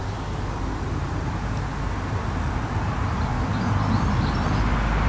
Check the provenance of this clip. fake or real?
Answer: real